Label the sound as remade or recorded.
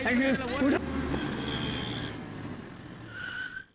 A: recorded